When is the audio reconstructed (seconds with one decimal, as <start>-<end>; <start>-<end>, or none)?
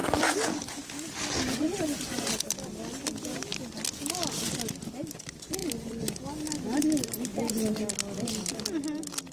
none